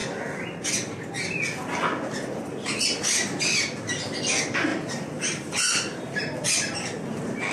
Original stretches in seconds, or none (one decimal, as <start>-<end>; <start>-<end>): 0.0-4.7; 6.0-7.5